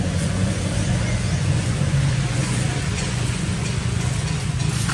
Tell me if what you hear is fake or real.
fake